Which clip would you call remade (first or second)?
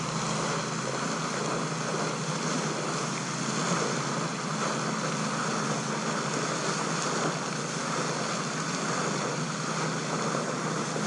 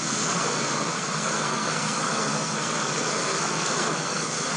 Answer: second